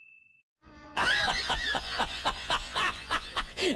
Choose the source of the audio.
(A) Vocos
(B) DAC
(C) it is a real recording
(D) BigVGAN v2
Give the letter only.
A